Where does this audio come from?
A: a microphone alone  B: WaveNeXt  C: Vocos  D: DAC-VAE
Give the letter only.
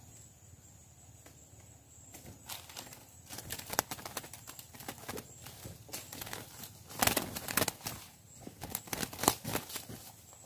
A